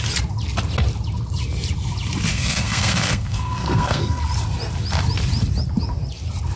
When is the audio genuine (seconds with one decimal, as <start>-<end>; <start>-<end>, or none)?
0.0-2.3; 4.2-6.6